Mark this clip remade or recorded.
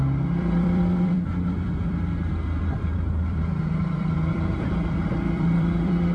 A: remade